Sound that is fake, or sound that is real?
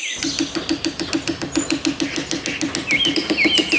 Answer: real